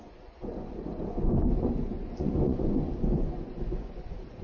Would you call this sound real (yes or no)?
no